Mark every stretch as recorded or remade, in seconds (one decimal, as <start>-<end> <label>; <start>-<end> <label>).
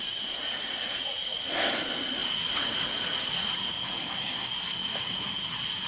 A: 0.0-0.4 recorded; 0.4-1.4 remade; 1.4-2.2 recorded; 2.2-4.0 remade; 4.0-4.8 recorded; 4.8-5.9 remade